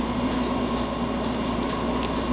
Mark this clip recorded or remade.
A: recorded